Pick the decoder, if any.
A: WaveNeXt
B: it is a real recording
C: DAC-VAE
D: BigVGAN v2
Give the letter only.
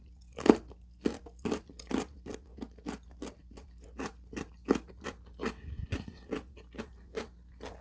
B